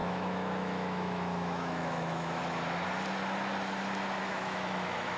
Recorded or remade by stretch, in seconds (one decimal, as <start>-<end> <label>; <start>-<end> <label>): 0.0-2.4 remade; 2.4-4.2 recorded; 4.2-5.2 remade